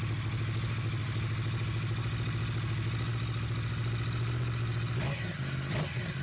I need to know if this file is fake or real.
real